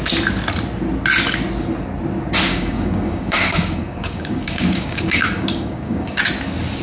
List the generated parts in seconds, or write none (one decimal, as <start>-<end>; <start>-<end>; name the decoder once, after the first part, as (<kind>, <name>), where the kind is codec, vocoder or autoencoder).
2.5-6.2 (codec, DAC)